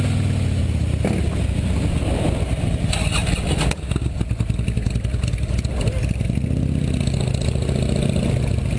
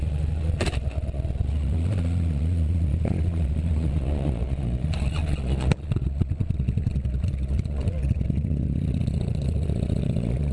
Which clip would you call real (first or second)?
first